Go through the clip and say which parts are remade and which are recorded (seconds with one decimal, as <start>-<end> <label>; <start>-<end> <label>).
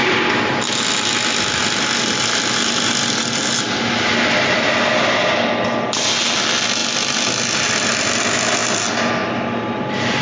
0.0-10.2 recorded